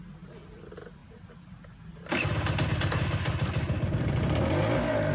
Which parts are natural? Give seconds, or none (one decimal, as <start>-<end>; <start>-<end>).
0.0-5.1